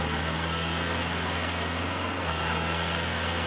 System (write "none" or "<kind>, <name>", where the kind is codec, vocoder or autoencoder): codec, SNAC